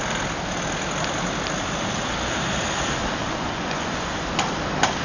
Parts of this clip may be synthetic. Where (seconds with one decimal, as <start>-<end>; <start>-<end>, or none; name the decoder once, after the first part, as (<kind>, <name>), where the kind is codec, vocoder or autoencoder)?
3.2-4.2 (vocoder, Vocos)